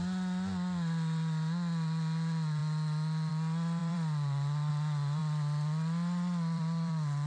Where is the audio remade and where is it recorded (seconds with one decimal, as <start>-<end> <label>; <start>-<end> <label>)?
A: 0.0-3.8 recorded; 3.8-4.7 remade; 4.7-5.2 recorded; 5.2-7.3 remade